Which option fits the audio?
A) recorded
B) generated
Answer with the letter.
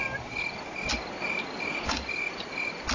A